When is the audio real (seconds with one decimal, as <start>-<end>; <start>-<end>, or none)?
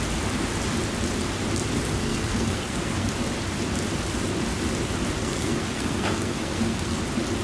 0.0-2.0; 3.1-5.2; 7.0-7.4